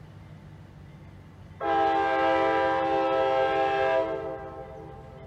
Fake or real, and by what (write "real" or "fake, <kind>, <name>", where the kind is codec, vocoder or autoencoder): real